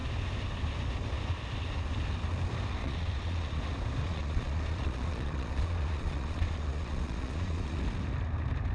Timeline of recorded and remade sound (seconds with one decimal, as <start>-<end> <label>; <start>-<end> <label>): 0.0-2.8 recorded; 2.8-3.6 remade; 3.6-4.0 recorded; 4.0-7.8 remade; 7.8-8.7 recorded